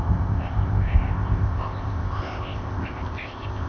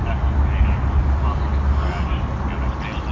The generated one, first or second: first